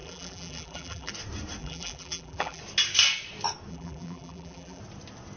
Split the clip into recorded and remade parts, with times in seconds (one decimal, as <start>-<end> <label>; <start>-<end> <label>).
0.0-1.1 remade; 1.1-1.6 recorded; 1.6-2.6 remade; 2.6-3.7 recorded; 3.7-4.8 remade; 4.8-5.4 recorded